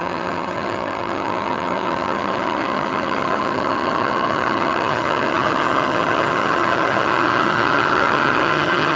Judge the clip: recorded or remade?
remade